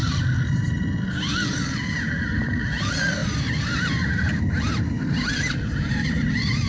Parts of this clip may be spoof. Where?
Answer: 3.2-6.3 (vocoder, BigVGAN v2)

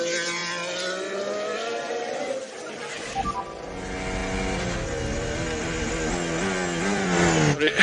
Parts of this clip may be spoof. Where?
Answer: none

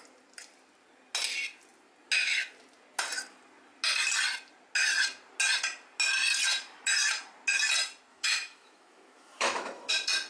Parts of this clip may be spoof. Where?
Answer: 8.1-9.9 (autoencoder, DAC-VAE)

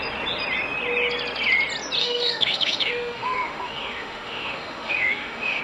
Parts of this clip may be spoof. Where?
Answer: 2.0-5.6 (autoencoder, DAC-VAE)

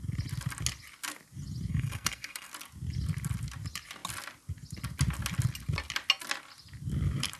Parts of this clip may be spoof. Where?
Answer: 1.7-2.5 (codec, SNAC)

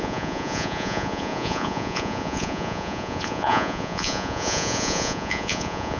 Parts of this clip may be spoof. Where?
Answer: 0.0-6.0 (vocoder, Vocos)

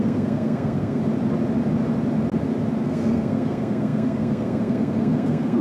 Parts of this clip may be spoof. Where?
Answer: 0.0-1.0 (codec, SNAC); 2.8-5.6

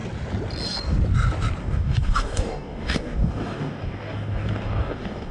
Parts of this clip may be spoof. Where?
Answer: 1.6-5.3 (codec, DAC)